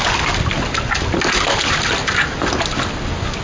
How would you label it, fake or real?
real